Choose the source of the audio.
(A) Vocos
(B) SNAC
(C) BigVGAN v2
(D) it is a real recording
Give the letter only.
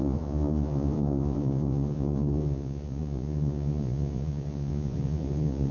A